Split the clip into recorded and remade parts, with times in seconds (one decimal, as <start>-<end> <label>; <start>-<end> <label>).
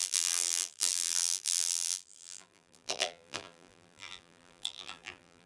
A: 0.0-5.5 remade